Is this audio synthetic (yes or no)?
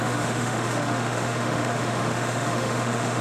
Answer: yes